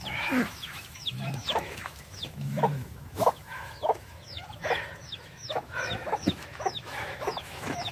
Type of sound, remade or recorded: remade